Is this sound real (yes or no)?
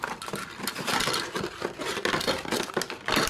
yes